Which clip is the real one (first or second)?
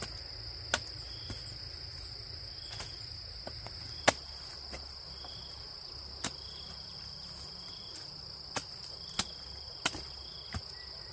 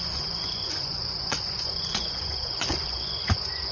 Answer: first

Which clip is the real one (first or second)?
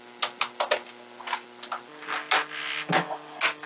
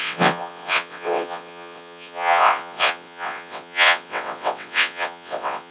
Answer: first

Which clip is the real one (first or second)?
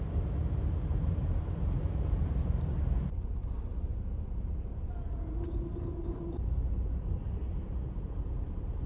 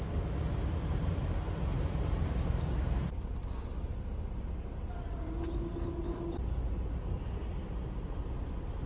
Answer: second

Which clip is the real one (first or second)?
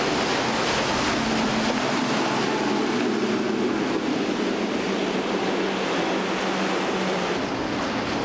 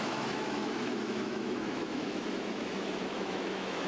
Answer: first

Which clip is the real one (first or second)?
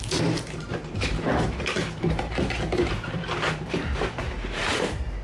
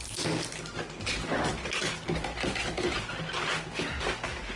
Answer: second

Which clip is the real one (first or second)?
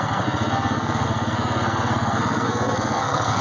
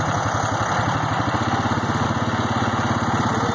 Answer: second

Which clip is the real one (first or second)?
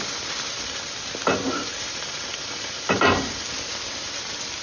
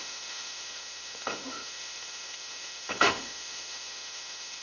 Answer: first